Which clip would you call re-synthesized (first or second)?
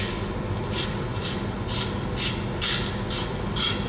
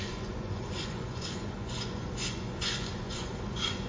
second